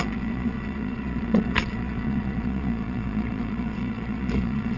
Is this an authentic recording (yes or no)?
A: no